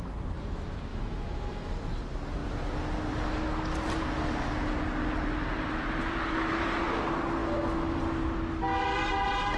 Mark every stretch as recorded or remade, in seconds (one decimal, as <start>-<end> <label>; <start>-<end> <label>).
0.0-0.9 recorded; 0.9-1.7 remade; 1.7-7.4 recorded; 7.4-8.0 remade; 8.0-9.6 recorded